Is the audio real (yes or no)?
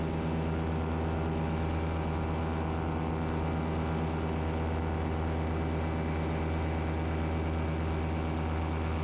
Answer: yes